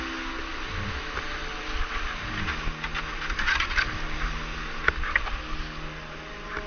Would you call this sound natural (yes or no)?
yes